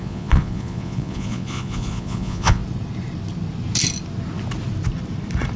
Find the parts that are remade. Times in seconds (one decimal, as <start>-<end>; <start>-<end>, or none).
0.0-2.6